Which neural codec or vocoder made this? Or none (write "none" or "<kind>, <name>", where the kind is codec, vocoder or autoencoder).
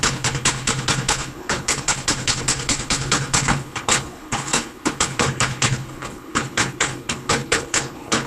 codec, HILCodec